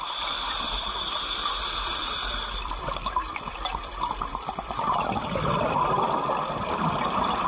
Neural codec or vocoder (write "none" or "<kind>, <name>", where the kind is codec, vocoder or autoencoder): vocoder, BigVGAN v2